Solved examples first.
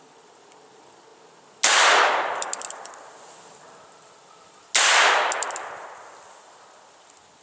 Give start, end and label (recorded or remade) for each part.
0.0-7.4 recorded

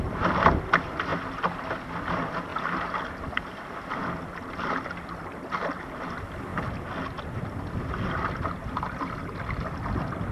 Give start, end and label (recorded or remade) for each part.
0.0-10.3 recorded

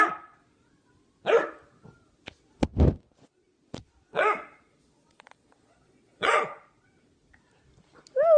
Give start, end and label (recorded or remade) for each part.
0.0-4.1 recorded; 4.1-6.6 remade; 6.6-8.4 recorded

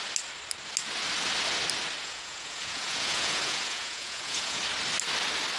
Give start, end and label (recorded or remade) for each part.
0.0-2.0 recorded; 2.0-4.6 remade; 4.6-5.6 recorded

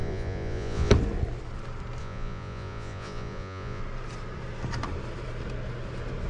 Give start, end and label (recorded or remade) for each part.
0.0-0.9 remade; 0.9-2.0 recorded; 2.0-3.8 remade; 3.8-6.3 recorded

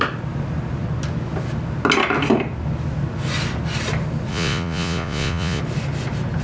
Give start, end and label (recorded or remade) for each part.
0.0-4.3 recorded; 4.3-5.6 remade; 5.6-6.4 recorded

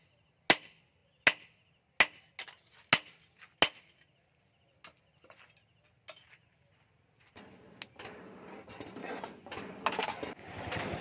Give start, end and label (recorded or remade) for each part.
0.0-9.0 recorded; 9.0-9.8 remade; 9.8-11.0 recorded

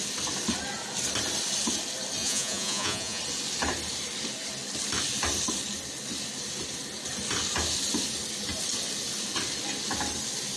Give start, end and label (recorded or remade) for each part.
0.0-2.2 recorded; 2.2-3.2 remade; 3.2-10.6 recorded